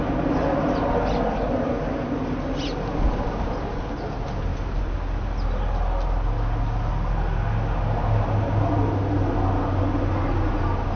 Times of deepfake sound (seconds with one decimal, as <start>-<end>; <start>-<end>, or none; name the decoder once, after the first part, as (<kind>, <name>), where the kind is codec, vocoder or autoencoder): none